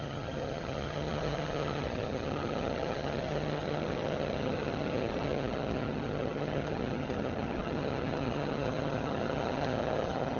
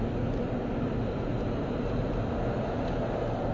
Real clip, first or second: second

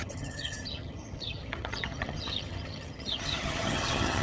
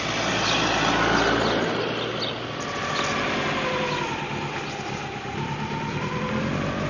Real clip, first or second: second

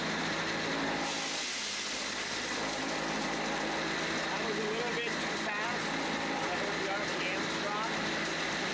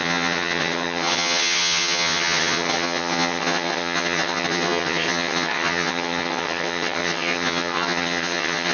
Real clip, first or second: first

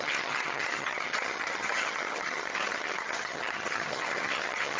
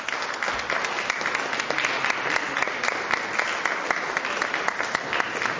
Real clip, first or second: second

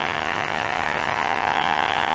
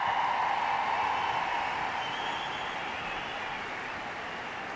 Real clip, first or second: second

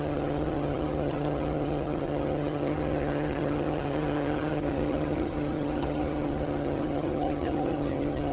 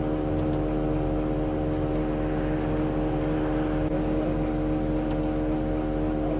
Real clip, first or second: second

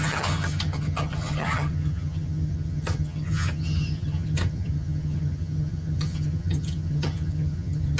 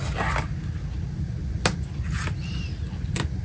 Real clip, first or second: second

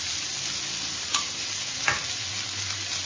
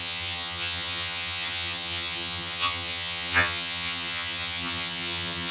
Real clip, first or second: first